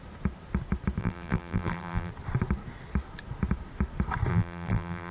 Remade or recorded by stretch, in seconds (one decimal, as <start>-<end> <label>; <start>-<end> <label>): 0.0-1.0 recorded; 1.0-2.1 remade; 2.1-4.3 recorded; 4.3-5.1 remade